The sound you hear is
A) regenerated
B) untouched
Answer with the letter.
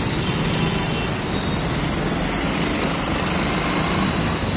B